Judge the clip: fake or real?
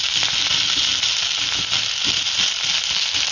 real